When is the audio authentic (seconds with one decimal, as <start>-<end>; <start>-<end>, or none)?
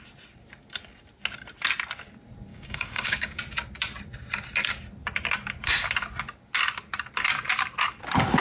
0.0-2.5; 3.4-8.4